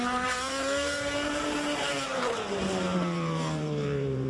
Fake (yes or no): yes